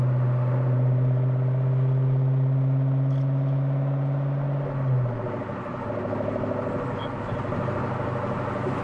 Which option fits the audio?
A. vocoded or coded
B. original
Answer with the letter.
B